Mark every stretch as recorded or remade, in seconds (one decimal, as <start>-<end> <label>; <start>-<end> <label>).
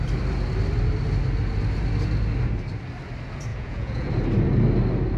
0.0-3.5 recorded; 3.5-4.1 remade; 4.1-5.2 recorded